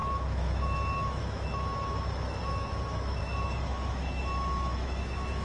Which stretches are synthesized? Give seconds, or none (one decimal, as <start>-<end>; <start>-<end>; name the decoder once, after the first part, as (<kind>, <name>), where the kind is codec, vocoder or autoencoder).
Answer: 0.0-5.4 (autoencoder, DAC-VAE)